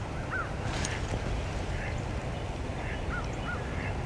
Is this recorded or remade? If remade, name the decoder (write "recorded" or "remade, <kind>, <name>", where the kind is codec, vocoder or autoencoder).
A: remade, vocoder, BigVGAN v2